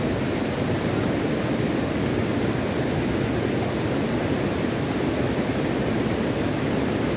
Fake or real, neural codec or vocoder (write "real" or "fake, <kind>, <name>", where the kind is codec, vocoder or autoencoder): real